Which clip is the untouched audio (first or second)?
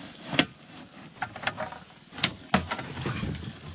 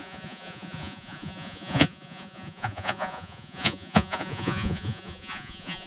first